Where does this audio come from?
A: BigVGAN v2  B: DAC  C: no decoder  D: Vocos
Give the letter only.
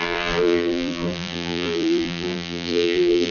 A